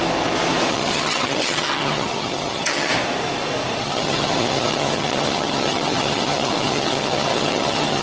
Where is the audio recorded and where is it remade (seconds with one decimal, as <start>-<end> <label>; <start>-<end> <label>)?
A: 0.0-0.7 recorded; 0.7-2.9 remade; 2.9-3.8 recorded; 3.8-8.0 remade